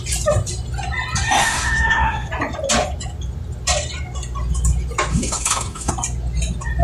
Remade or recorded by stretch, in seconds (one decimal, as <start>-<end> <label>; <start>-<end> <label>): 0.0-1.4 recorded; 1.4-2.3 remade; 2.3-5.1 recorded; 5.1-5.9 remade; 5.9-6.8 recorded